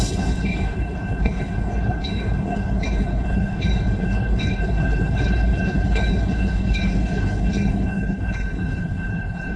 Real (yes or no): no